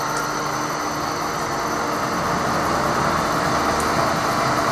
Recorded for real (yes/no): yes